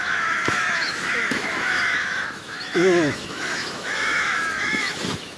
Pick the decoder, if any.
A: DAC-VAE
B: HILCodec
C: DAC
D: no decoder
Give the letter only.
A